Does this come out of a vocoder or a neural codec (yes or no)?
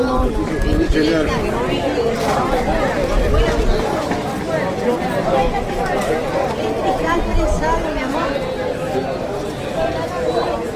no